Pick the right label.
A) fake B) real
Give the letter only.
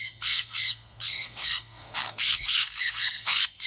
A